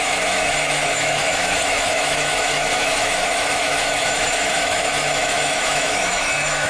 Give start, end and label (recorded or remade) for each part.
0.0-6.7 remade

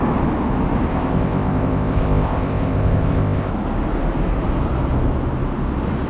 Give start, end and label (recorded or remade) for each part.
0.0-0.9 recorded; 0.9-3.5 remade; 3.5-6.1 recorded

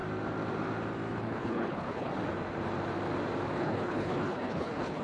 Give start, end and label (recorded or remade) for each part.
0.0-1.2 recorded; 1.2-2.1 remade; 2.1-3.6 recorded; 3.6-5.0 remade

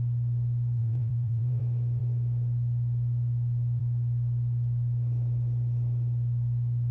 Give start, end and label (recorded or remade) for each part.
0.0-0.8 recorded; 0.8-1.6 remade; 1.6-6.9 recorded

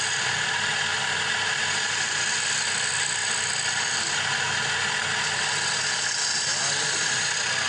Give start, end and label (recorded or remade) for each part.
0.0-7.7 recorded